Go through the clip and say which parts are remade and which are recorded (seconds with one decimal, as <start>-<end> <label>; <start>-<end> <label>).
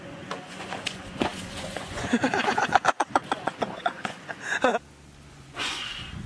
0.0-4.7 remade; 4.7-5.3 recorded; 5.3-6.3 remade